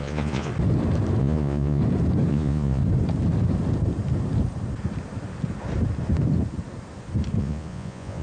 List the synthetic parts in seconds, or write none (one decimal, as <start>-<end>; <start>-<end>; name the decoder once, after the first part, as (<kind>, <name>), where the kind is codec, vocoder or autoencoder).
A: 0.0-0.5 (vocoder, Vocos); 1.2-1.8; 2.3-2.8; 7.4-8.2